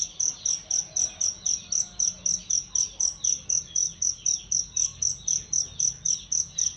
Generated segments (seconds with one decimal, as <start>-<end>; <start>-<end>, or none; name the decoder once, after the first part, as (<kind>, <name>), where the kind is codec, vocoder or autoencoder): none